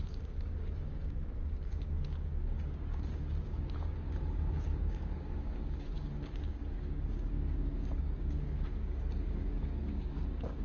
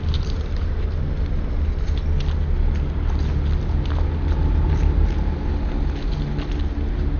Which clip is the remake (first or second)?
first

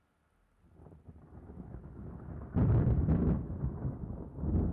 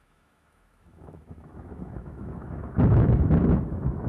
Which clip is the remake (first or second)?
second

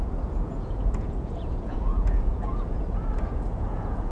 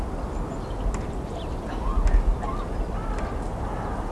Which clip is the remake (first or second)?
first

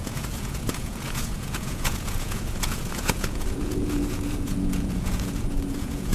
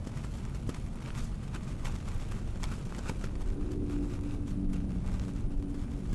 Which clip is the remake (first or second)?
first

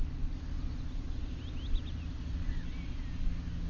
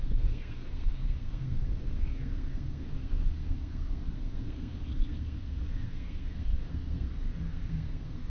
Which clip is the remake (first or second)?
second